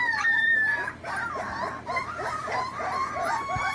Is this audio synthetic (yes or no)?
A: no